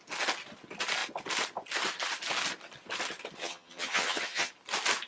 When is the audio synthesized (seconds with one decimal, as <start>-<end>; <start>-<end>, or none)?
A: 3.4-4.5